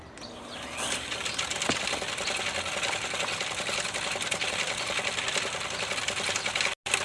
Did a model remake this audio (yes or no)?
no